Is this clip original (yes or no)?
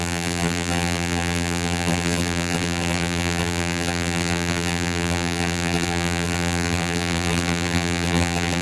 no